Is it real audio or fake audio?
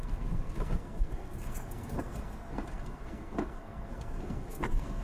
fake